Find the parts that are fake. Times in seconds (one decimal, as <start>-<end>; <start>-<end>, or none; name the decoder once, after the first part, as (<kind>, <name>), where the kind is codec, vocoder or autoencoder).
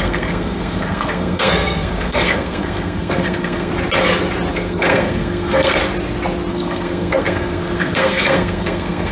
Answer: 0.0-3.7 (codec, SNAC); 4.5-5.8; 6.5-9.1